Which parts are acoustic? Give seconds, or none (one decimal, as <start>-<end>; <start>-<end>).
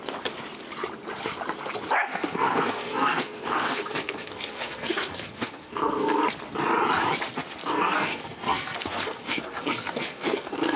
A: 0.0-2.1; 6.3-7.6